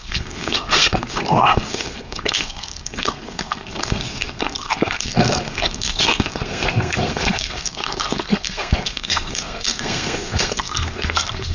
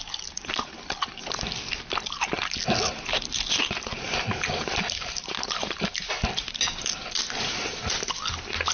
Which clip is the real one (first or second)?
second